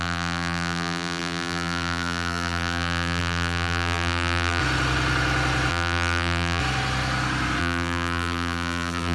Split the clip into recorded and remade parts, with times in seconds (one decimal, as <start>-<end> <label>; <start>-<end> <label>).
0.0-4.6 remade; 4.6-5.7 recorded; 5.7-6.6 remade; 6.6-7.6 recorded; 7.6-9.1 remade